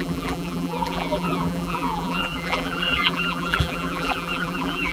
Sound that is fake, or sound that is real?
fake